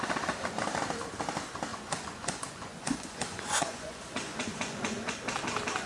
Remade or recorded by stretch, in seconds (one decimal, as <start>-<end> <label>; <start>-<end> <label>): 0.0-1.7 recorded; 1.7-5.2 remade; 5.2-5.9 recorded